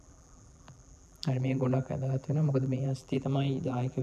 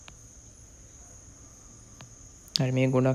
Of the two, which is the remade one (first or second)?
first